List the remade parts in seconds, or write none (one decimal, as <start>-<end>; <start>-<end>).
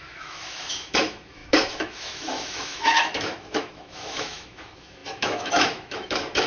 0.0-6.5